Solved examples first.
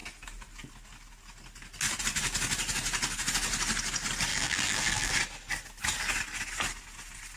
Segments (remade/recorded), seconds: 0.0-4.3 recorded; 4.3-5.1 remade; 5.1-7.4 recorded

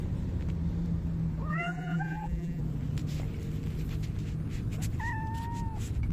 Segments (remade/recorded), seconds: 0.0-1.5 recorded; 1.5-2.6 remade; 2.6-6.1 recorded